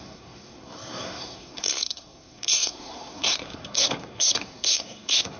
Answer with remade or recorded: remade